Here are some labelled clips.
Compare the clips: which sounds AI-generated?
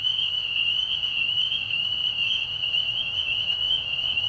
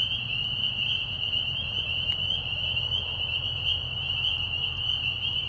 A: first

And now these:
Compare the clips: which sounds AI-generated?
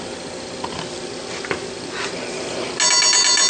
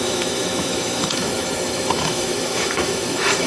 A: second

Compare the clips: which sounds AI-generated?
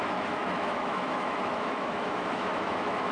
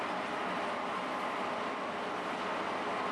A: first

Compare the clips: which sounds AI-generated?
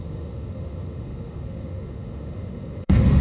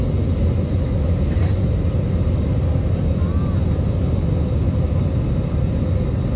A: first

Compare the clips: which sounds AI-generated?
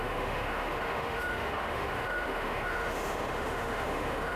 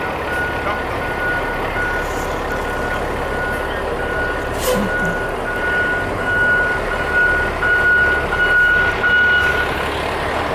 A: first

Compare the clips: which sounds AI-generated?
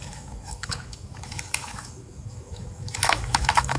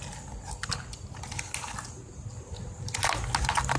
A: first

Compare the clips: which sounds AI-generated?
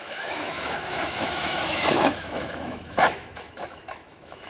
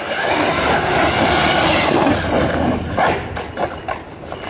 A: first